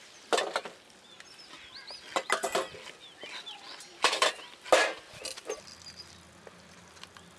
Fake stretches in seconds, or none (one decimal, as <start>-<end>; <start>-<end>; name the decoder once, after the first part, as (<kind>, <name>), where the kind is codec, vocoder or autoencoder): none